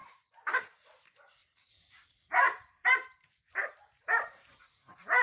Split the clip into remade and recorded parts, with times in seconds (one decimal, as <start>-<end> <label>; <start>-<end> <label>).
0.0-0.6 recorded; 0.6-5.2 remade